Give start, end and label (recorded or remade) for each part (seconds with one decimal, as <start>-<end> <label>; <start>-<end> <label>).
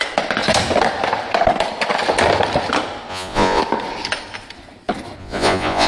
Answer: 0.0-3.1 recorded; 3.1-3.6 remade; 3.6-5.2 recorded; 5.2-5.9 remade